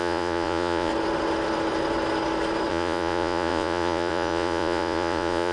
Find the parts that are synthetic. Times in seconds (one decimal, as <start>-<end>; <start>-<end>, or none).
0.0-0.9; 2.7-5.5